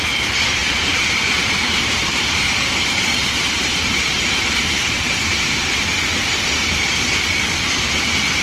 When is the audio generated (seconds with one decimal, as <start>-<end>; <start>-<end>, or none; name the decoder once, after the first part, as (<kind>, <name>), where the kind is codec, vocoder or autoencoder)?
0.6-5.4 (vocoder, BigVGAN v2)